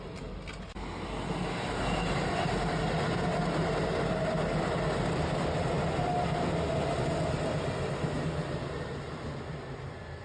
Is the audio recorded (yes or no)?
yes